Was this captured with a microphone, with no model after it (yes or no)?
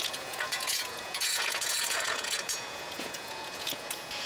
no